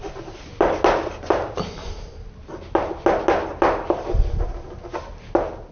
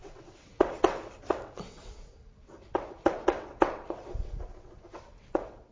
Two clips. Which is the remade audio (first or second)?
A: second